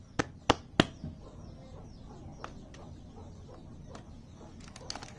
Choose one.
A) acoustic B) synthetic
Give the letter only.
A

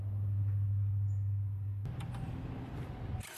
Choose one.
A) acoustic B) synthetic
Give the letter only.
A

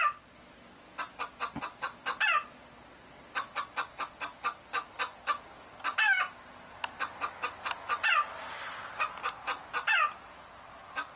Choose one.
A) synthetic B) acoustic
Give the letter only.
B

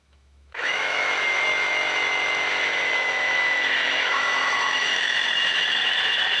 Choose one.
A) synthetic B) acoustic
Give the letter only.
A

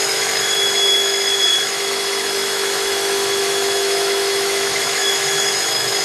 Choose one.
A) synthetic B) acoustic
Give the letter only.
A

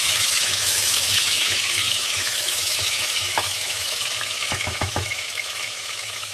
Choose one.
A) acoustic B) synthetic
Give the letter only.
B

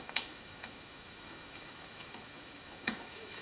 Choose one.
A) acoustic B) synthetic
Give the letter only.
B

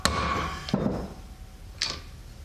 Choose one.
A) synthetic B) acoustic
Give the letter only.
B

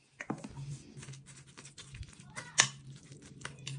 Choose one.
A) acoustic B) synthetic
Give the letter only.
A